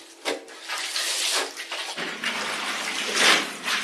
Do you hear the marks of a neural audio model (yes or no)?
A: no